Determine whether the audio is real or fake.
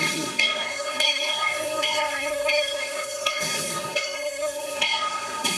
fake